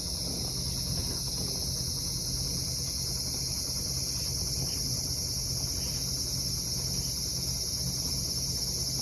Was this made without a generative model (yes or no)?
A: yes